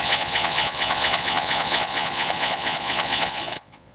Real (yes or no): no